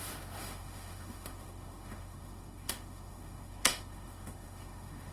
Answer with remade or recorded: remade